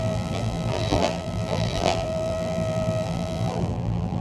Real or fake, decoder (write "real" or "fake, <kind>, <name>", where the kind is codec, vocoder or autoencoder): fake, vocoder, BigVGAN v2